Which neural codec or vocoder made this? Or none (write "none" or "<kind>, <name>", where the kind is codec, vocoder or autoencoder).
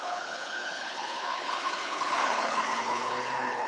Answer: codec, HILCodec